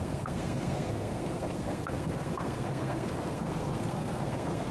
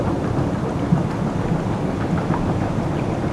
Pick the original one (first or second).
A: second